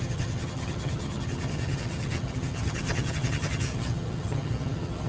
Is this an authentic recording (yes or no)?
no